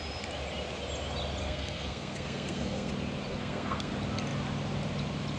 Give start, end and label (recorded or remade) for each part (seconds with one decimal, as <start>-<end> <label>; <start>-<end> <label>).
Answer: 0.0-1.4 recorded; 1.4-2.9 remade; 2.9-3.3 recorded; 3.3-3.9 remade; 3.9-5.4 recorded